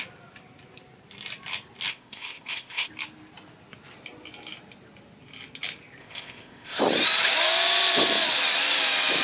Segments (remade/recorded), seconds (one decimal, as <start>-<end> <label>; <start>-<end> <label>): 0.0-1.9 recorded; 1.9-2.9 remade; 2.9-6.0 recorded; 6.0-6.8 remade; 6.8-9.2 recorded